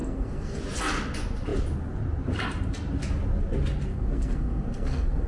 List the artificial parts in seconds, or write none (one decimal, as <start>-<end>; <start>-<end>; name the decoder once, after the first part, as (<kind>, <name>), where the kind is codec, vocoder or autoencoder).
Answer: 0.0-0.6 (codec, SNAC); 3.9-5.3